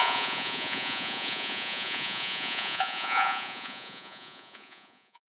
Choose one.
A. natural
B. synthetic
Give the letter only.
B